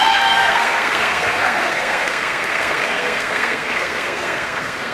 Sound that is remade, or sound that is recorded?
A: remade